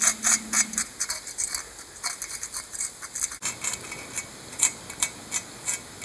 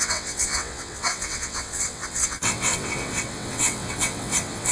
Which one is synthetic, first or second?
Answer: second